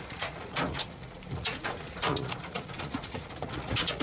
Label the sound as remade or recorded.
remade